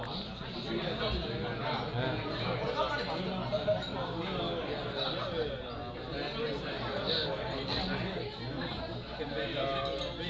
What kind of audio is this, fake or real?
real